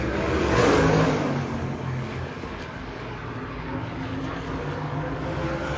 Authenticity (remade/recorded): remade